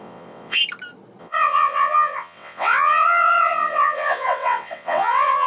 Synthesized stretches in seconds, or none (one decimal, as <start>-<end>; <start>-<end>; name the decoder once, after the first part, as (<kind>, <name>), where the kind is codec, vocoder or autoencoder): 0.0-0.6 (vocoder, WaveNeXt); 1.2-5.5